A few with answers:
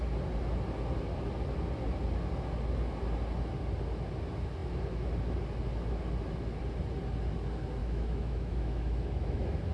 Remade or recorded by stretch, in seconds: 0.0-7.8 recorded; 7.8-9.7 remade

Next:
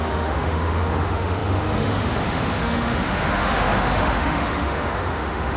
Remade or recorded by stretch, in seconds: 0.0-5.6 remade

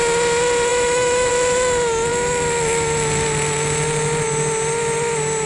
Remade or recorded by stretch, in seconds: 0.0-0.7 recorded; 0.7-1.3 remade; 1.3-5.5 recorded

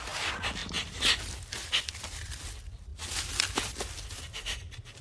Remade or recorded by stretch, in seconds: 0.0-5.0 recorded

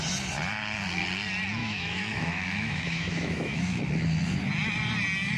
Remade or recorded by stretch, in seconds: 0.0-1.6 recorded; 1.6-3.8 remade; 3.8-5.4 recorded

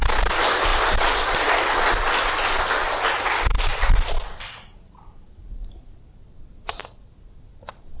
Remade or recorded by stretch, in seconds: 0.0-8.0 recorded

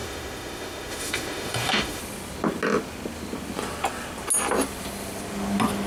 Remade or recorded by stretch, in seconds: 0.0-2.0 remade; 2.0-5.9 recorded

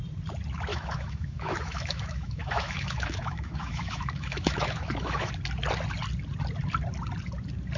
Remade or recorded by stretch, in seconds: 0.0-0.7 recorded; 0.7-5.3 remade; 5.3-7.8 recorded